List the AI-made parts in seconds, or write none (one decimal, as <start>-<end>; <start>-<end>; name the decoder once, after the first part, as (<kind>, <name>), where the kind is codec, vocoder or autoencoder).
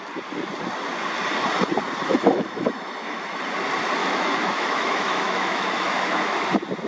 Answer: 2.1-3.4 (autoencoder, DAC-VAE); 4.0-6.5